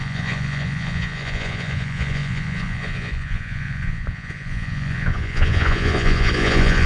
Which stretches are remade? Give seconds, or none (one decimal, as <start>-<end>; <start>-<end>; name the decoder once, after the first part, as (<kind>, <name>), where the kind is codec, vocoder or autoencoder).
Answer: 0.0-6.9 (vocoder, Vocos)